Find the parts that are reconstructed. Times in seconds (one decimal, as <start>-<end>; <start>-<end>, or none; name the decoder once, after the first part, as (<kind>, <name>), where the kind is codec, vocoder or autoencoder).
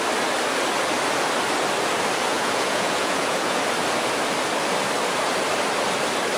2.3-3.6 (vocoder, Vocos)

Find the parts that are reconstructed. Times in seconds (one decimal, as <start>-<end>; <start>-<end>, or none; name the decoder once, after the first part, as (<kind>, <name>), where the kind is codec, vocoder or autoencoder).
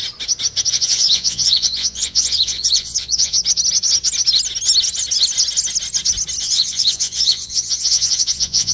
0.7-3.4 (vocoder, Vocos); 6.4-8.7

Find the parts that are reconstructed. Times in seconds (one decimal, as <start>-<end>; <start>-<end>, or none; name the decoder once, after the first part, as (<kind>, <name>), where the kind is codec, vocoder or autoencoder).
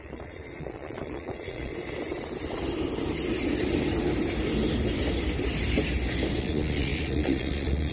0.0-1.7 (vocoder, Vocos); 6.4-7.9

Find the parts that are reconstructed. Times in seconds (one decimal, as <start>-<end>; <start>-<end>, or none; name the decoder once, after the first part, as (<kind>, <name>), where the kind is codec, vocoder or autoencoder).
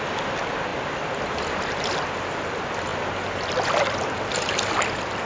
none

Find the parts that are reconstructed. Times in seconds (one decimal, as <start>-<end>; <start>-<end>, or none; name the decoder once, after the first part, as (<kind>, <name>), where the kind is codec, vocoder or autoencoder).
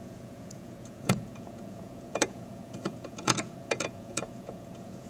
0.0-5.1 (vocoder, Vocos)